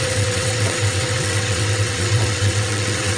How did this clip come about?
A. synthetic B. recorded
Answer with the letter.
A